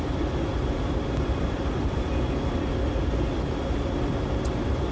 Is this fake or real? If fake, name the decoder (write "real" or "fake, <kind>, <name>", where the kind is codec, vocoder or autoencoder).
real